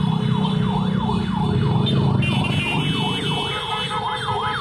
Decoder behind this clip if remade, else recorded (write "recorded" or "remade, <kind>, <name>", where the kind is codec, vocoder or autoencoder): recorded